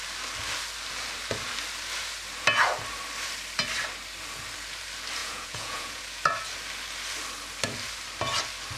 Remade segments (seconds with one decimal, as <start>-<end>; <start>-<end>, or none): 5.2-6.0